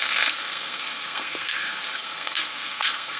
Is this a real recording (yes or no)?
no